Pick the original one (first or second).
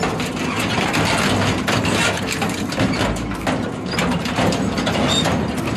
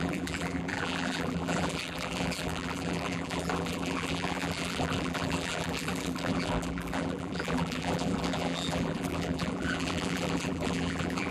first